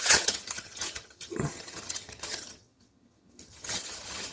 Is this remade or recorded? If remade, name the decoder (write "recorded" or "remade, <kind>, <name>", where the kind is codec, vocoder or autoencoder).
remade, vocoder, HiFi-GAN